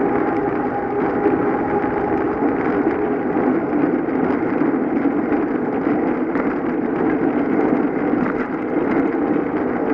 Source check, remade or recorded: recorded